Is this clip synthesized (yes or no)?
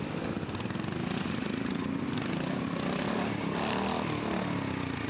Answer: no